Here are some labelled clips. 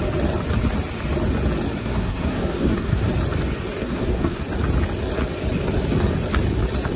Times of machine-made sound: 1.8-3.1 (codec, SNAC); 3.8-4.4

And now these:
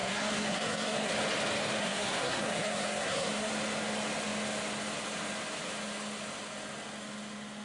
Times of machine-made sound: 0.0-1.1 (codec, SNAC); 1.8-3.5

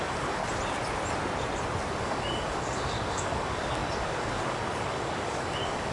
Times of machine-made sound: 0.0-0.4 (codec, DAC); 1.9-5.9

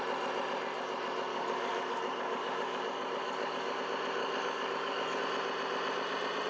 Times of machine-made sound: 1.3-3.8 (codec, DAC); 4.2-5.2

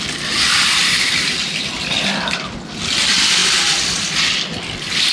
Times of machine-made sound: 0.8-2.7 (vocoder, BigVGAN v2)